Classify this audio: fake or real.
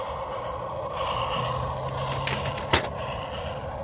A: real